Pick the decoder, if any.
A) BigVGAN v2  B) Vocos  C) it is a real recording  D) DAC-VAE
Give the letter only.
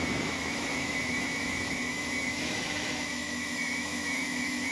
D